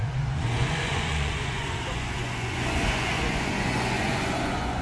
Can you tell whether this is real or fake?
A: fake